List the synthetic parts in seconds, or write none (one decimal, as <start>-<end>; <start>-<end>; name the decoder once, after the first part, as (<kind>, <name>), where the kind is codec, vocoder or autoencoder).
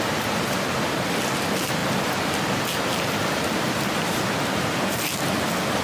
none